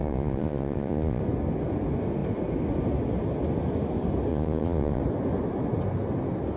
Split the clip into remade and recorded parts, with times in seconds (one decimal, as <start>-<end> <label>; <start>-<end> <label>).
0.0-1.2 remade; 1.2-4.3 recorded; 4.3-5.0 remade; 5.0-6.6 recorded